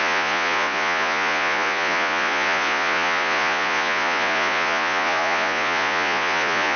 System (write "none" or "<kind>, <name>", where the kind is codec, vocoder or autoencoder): vocoder, Vocos